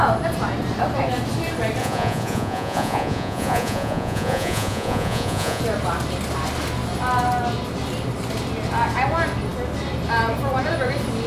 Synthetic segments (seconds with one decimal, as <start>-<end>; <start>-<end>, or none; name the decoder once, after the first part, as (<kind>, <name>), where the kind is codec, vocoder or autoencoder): 1.8-5.6 (vocoder, Vocos)